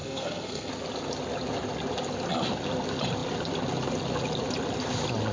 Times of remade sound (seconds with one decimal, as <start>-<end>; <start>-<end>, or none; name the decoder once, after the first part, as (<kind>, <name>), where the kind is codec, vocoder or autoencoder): 0.0-0.7 (codec, SNAC)